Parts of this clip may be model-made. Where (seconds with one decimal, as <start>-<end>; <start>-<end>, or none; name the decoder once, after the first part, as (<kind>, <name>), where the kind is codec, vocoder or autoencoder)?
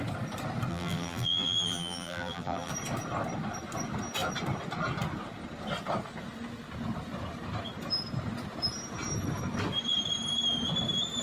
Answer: 0.7-2.7 (vocoder, BigVGAN v2)